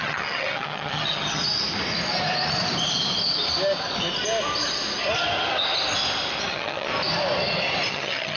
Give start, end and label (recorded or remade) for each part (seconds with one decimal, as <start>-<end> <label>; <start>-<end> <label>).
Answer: 0.0-1.4 remade; 1.4-6.4 recorded; 6.4-6.9 remade; 6.9-7.9 recorded; 7.9-8.4 remade